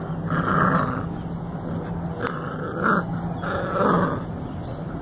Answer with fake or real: real